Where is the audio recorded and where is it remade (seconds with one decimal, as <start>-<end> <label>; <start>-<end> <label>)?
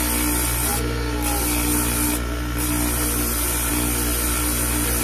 0.0-5.0 recorded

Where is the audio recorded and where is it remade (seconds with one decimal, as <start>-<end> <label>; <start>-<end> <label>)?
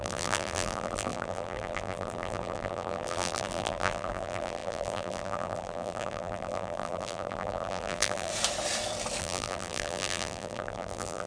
0.0-8.3 remade; 8.3-9.2 recorded; 9.2-11.3 remade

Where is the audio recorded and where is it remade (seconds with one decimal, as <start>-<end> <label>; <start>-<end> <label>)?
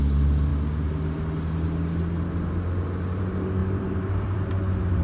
0.0-3.6 recorded; 3.6-4.5 remade; 4.5-5.0 recorded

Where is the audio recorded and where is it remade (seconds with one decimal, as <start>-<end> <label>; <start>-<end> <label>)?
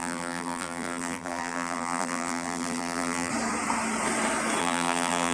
0.0-3.3 remade; 3.3-4.6 recorded; 4.6-5.3 remade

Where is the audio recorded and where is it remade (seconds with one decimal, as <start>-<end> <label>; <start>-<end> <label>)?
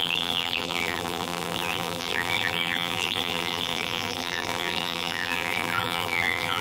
0.0-6.6 remade